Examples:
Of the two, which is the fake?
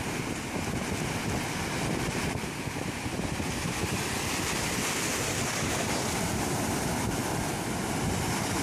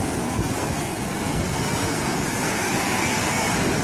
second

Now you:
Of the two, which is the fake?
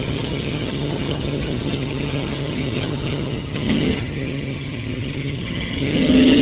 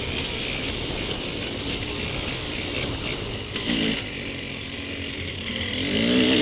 first